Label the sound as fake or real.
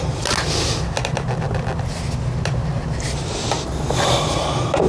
real